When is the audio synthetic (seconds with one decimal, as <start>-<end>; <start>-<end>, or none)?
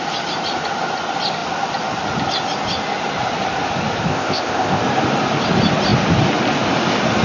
4.1-4.8